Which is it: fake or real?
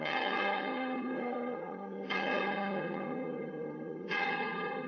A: fake